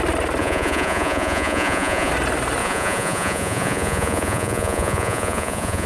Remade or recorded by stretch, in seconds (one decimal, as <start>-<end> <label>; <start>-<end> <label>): 0.0-0.4 recorded; 0.4-2.1 remade; 2.1-2.6 recorded; 2.6-5.9 remade